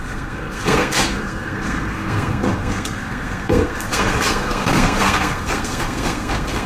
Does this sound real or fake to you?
fake